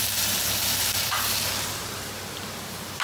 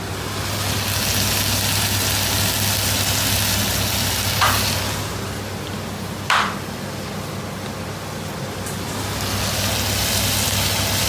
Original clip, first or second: second